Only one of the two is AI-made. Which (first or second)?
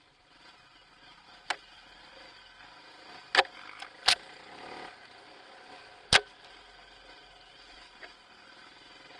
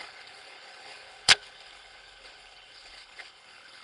second